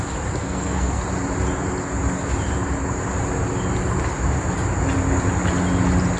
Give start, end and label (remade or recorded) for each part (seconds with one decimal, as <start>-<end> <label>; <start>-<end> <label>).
0.0-0.4 recorded; 0.4-1.0 remade; 1.0-6.2 recorded